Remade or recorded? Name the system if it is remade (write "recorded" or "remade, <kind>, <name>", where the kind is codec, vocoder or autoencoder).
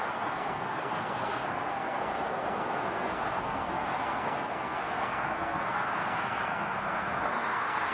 remade, codec, SNAC